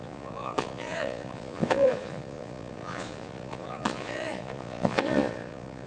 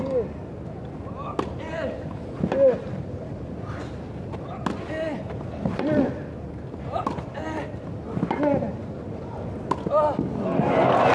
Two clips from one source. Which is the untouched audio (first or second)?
second